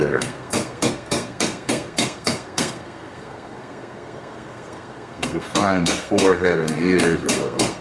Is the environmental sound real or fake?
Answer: fake